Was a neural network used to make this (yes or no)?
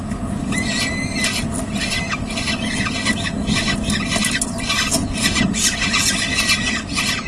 no